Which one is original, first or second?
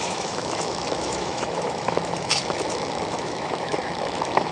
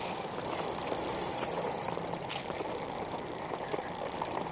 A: second